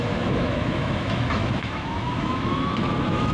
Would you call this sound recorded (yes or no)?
no